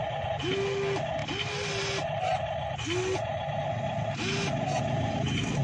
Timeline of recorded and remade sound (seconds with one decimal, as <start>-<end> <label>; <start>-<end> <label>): 0.0-5.6 recorded